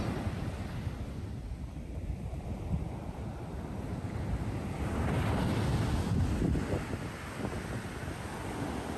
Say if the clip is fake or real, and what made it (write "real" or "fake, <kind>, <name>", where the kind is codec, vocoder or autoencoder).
real